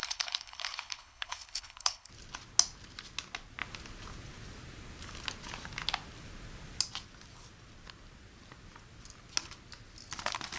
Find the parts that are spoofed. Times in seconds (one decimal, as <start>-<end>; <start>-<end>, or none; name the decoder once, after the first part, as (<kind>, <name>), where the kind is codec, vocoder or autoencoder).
0.0-2.1 (codec, HILCodec)